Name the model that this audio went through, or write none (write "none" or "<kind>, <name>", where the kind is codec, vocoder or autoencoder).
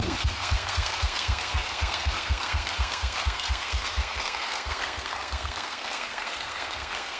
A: codec, SNAC